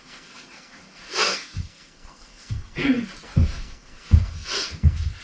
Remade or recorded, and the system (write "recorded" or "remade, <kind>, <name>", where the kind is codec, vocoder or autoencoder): remade, codec, SNAC